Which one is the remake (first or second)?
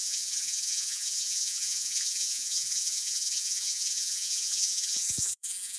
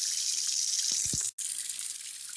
first